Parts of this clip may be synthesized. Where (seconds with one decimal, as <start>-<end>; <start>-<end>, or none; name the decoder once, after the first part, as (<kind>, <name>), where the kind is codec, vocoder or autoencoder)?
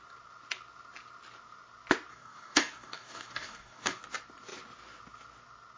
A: 2.1-4.0 (codec, DAC)